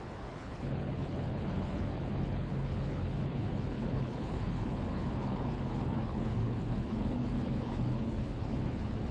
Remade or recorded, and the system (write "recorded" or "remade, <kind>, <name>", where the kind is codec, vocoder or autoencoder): remade, codec, HILCodec